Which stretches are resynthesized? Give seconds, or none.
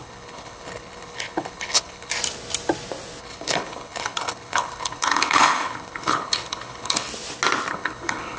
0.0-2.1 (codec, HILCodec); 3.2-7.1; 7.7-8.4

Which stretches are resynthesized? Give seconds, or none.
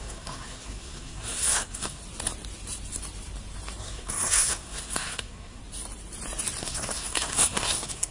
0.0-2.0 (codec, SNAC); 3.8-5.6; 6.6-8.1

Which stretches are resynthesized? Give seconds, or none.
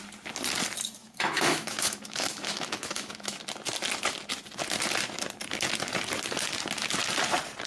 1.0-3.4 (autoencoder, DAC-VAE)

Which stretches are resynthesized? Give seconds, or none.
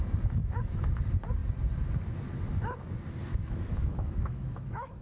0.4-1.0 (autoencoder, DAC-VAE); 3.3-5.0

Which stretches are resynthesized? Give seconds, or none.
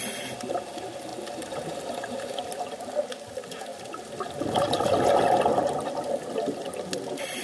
none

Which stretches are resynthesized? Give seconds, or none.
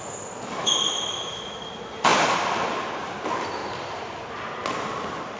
0.6-1.6 (autoencoder, DAC-VAE)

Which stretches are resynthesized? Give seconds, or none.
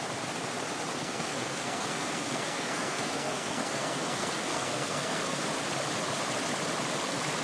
1.0-5.4 (codec, SNAC)